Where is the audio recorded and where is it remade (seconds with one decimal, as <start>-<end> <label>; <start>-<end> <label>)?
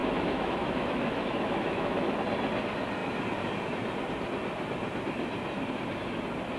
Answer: 0.0-2.1 remade; 2.1-6.6 recorded